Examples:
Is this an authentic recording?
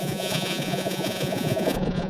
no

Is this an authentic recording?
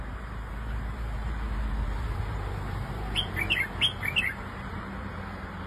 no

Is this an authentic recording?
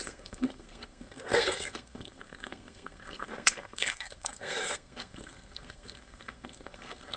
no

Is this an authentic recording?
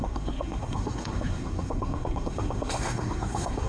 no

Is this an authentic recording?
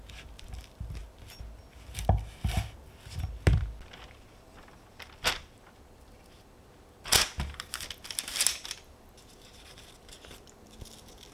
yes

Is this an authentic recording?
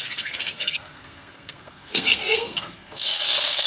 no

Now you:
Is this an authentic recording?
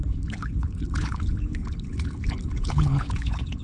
no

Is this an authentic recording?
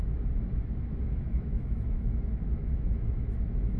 no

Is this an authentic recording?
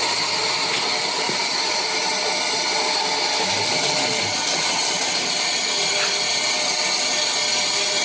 yes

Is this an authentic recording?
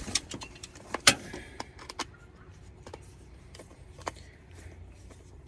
no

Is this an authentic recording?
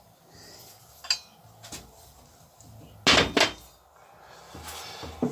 yes